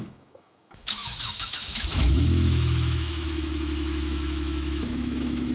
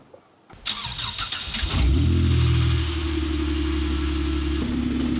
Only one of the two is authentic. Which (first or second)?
second